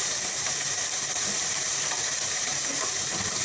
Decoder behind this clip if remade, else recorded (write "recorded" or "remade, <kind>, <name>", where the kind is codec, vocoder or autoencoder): remade, vocoder, BigVGAN v2